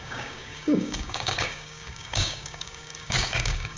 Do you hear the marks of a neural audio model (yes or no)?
yes